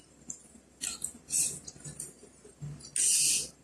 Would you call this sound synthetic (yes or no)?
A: no